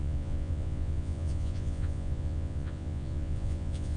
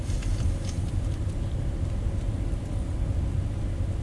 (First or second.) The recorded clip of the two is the second